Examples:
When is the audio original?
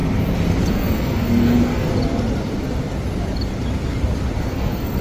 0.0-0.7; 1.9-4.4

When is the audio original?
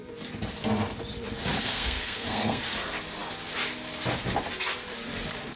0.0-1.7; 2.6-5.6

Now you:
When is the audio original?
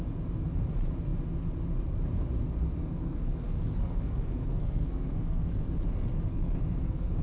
0.0-2.8; 5.7-6.3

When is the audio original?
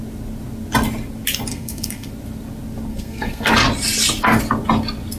0.0-1.5; 2.1-2.9; 3.5-5.2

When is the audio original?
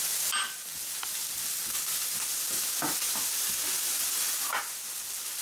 0.0-5.4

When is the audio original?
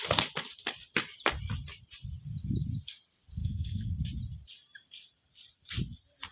0.0-3.4; 3.9-6.3